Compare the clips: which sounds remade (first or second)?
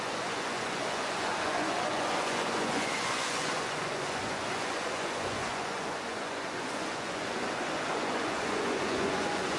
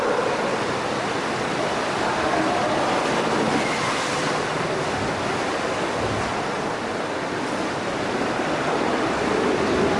first